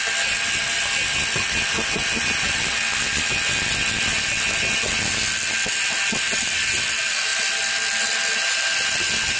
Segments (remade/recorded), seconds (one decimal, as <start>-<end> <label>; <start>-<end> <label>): 0.0-9.4 recorded